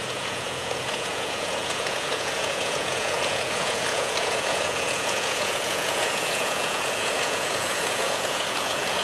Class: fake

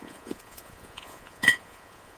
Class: fake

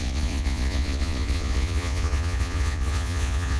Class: fake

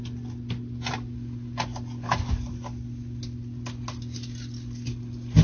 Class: real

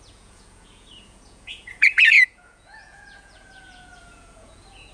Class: fake